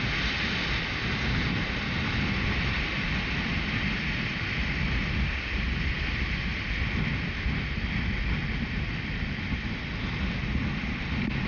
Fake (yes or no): no